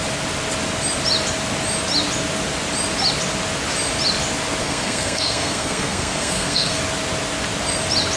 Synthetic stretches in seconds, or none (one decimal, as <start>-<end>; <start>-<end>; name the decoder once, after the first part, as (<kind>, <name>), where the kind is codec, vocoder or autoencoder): 4.6-6.8 (codec, SNAC)